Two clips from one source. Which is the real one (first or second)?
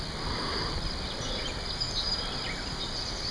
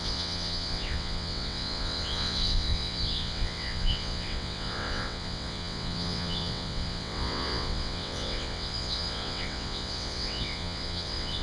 first